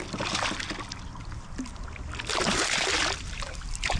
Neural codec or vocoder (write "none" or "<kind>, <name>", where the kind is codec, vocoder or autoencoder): none